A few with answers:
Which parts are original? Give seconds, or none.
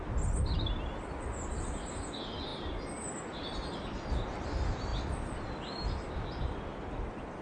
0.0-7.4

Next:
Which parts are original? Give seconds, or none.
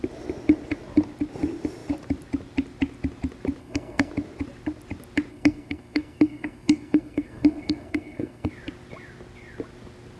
0.0-3.6; 4.1-5.3; 8.5-10.2